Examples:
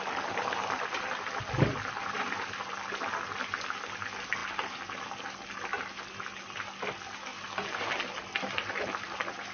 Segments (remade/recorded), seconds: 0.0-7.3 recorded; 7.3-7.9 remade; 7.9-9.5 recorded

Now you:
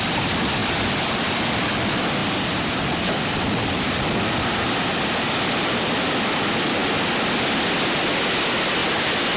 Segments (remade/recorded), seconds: 0.0-0.6 recorded; 0.6-1.6 remade; 1.6-8.8 recorded; 8.8-9.4 remade

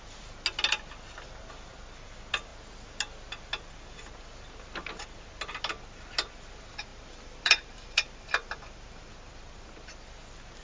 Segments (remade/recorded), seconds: 0.0-6.9 recorded; 6.9-9.1 remade; 9.1-10.6 recorded